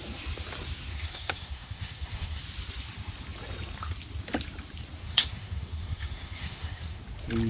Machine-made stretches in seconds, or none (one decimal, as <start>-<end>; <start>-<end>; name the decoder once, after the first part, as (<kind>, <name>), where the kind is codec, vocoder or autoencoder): 0.9-2.4 (codec, SNAC); 5.0-7.0